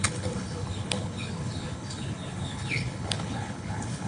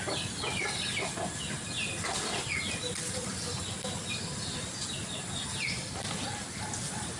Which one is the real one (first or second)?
second